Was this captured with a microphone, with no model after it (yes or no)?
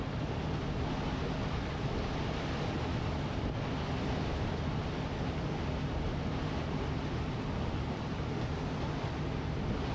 yes